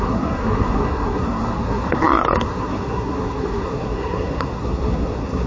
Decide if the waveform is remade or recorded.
remade